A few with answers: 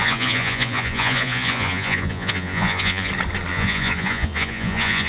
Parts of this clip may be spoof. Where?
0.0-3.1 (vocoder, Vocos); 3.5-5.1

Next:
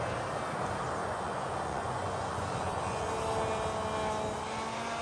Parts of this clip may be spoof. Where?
1.0-3.1 (vocoder, Vocos)

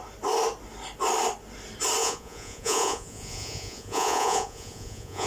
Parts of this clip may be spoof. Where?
2.0-5.3 (vocoder, Vocos)

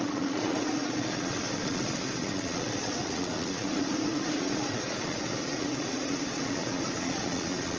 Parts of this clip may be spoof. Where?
0.0-7.8 (vocoder, Vocos)

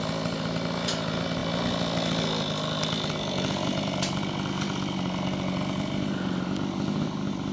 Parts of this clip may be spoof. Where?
none

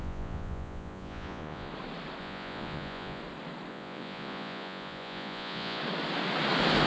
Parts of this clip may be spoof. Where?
0.0-1.7 (vocoder, Vocos); 2.2-3.2; 3.7-5.8

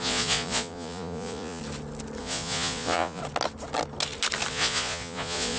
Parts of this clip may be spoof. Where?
0.0-1.6 (vocoder, Vocos); 2.2-3.2; 4.5-5.6